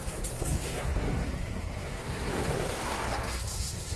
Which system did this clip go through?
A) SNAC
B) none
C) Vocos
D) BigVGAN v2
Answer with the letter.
A